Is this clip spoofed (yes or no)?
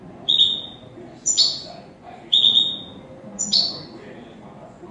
yes